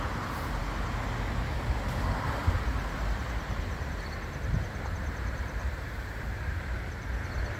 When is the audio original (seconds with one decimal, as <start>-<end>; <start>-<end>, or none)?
0.0-2.4; 7.0-7.6